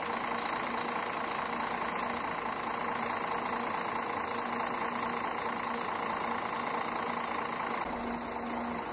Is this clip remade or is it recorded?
recorded